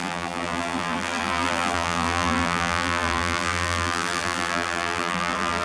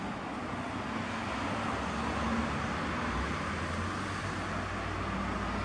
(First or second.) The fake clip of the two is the first